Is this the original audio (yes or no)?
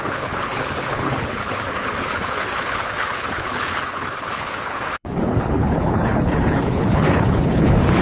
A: no